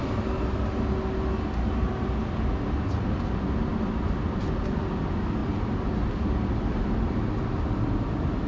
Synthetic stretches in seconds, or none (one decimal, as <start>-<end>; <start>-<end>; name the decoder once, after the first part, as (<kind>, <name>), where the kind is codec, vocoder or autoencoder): 5.4-6.1 (vocoder, BigVGAN v2)